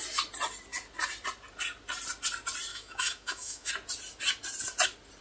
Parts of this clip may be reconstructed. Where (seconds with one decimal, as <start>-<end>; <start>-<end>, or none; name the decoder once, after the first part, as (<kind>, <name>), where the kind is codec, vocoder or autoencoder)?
2.7-3.7 (autoencoder, DAC-VAE)